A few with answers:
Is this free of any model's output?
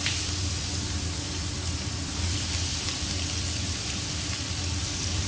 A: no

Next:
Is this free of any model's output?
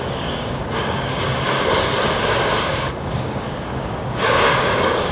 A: no